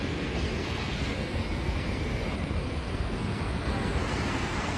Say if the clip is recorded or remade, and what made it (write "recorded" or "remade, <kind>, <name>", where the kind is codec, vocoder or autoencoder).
remade, codec, SNAC